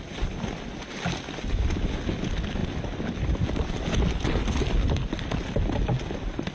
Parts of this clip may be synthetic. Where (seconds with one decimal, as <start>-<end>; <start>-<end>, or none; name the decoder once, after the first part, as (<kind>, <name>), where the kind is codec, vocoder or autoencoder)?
none